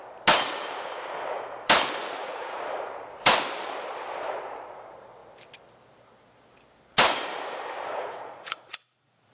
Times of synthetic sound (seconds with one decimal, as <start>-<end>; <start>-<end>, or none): 2.2-2.9; 8.0-9.3